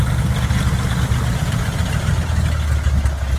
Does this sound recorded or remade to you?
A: recorded